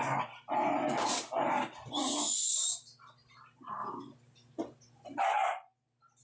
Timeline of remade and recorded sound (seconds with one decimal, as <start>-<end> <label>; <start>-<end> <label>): 0.0-6.2 recorded